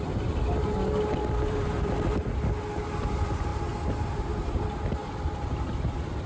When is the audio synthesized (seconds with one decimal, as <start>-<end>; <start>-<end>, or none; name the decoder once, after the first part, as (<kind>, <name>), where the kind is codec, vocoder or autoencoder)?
1.2-2.3 (vocoder, BigVGAN v2)